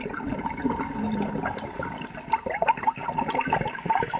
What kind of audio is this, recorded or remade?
recorded